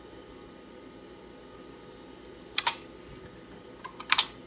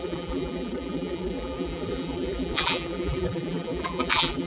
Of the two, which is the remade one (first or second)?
second